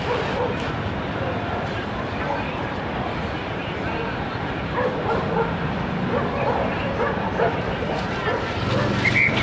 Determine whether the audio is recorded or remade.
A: remade